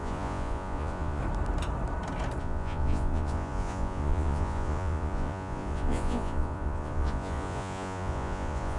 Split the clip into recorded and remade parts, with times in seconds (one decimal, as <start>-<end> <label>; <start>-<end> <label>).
0.0-1.2 remade; 1.2-2.4 recorded; 2.4-8.8 remade